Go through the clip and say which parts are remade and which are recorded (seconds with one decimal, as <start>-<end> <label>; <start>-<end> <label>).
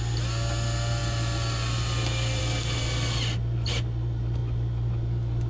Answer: 0.0-5.5 recorded